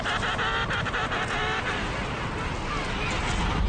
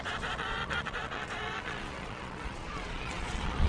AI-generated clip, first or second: second